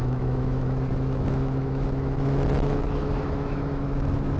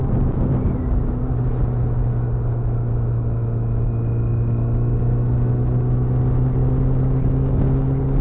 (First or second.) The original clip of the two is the second